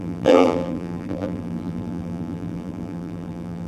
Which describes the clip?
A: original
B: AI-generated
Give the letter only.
B